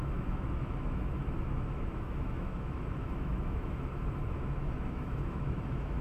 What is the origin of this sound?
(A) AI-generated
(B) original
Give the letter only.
A